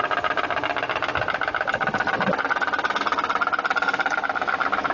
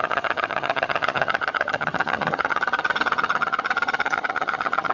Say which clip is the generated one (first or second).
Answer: second